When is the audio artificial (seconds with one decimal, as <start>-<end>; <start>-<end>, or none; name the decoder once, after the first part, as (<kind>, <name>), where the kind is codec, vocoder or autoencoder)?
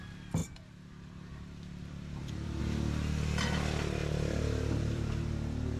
0.4-2.6 (vocoder, BigVGAN v2); 4.0-5.3